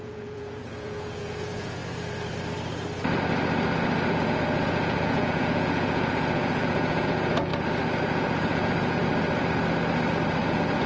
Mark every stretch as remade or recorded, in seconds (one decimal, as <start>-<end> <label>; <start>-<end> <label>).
0.0-1.8 remade; 1.8-4.1 recorded; 4.1-7.5 remade; 7.5-8.0 recorded; 8.0-9.1 remade; 9.1-10.4 recorded; 10.4-10.9 remade